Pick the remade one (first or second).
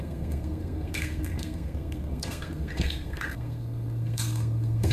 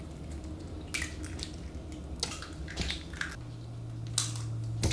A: first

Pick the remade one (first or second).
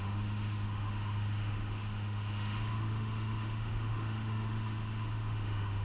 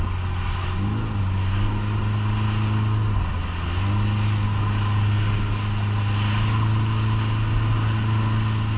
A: first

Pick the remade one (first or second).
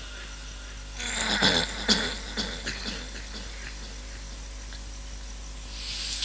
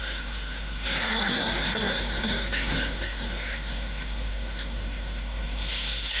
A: second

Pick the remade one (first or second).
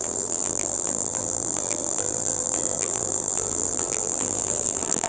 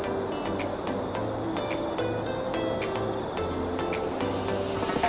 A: first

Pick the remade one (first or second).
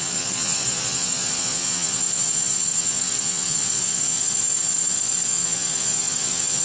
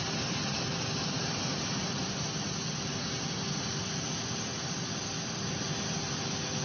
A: first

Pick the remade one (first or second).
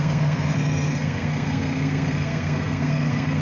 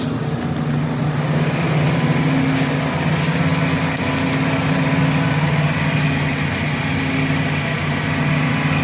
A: first